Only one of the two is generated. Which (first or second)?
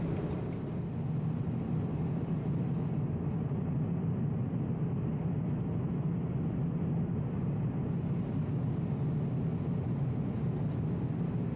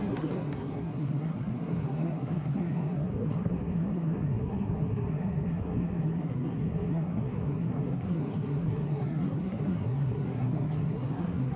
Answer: second